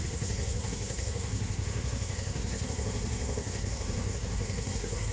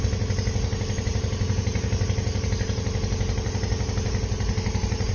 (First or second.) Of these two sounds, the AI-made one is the first